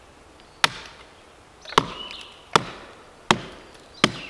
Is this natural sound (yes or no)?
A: yes